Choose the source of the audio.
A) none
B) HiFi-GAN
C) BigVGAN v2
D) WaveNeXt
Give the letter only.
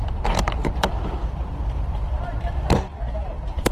C